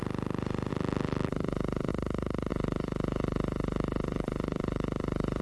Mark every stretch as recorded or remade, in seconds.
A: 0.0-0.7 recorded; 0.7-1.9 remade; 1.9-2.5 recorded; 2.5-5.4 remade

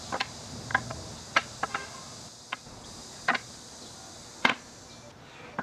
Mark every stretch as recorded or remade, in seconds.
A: 0.0-5.6 recorded